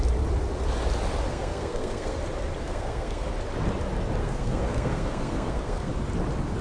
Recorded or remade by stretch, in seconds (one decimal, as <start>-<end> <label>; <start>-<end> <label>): 0.0-1.3 recorded; 1.3-2.2 remade; 2.2-2.6 recorded; 2.6-3.3 remade; 3.3-4.2 recorded; 4.2-5.9 remade; 5.9-6.6 recorded